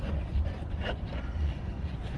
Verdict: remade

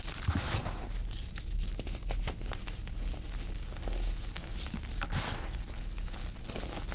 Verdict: recorded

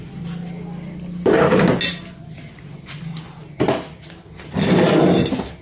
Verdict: recorded